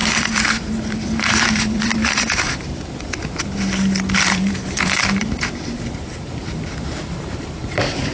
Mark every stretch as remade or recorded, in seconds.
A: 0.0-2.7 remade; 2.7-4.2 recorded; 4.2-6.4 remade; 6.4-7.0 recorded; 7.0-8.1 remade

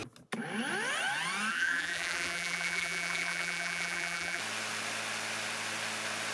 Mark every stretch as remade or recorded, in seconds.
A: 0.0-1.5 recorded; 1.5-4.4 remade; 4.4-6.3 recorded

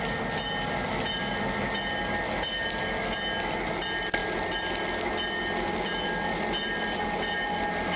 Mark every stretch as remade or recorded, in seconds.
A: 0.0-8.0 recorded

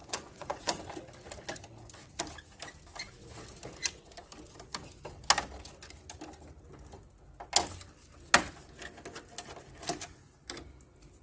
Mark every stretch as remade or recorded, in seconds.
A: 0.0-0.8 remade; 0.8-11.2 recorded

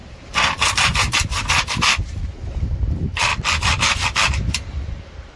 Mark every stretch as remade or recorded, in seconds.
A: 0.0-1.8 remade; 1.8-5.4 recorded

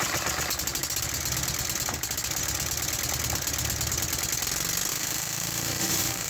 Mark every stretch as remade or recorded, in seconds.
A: 0.0-4.9 recorded; 4.9-6.3 remade